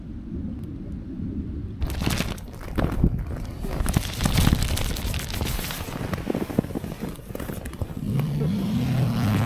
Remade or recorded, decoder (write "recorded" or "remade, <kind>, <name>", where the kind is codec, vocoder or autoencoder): recorded